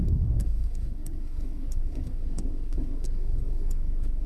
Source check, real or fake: fake